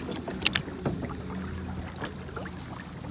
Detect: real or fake real